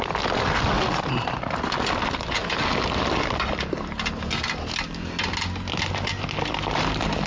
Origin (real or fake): real